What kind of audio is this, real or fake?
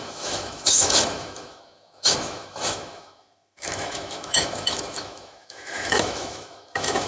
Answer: fake